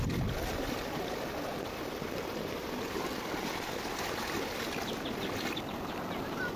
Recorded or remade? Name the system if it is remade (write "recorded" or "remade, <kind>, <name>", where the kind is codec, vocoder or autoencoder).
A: recorded